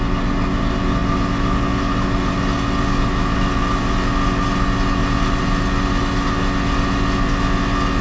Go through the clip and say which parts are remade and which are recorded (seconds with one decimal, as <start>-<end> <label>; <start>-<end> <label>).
0.0-8.0 recorded